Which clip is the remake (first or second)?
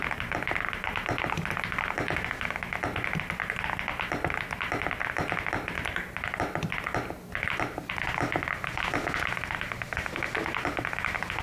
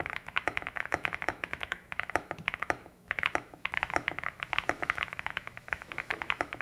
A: second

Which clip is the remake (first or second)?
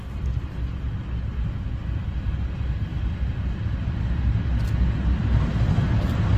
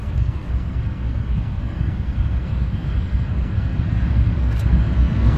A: second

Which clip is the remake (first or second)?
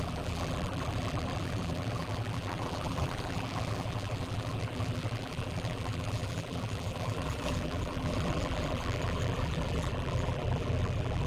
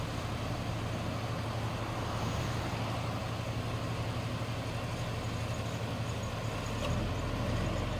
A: first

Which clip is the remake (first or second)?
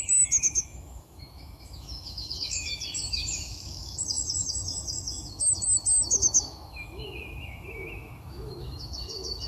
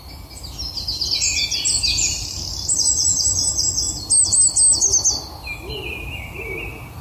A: first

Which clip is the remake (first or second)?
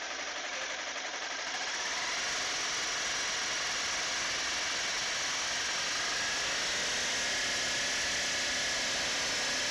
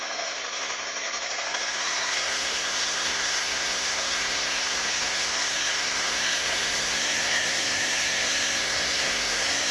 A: second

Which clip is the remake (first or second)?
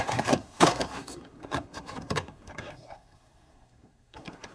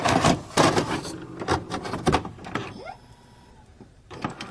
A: first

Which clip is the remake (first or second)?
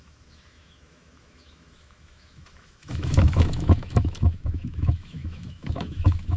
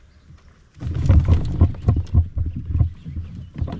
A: first